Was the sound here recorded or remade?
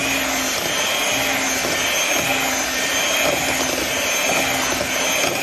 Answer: recorded